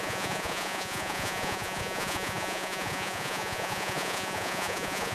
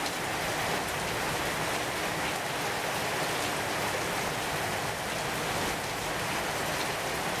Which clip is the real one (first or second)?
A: second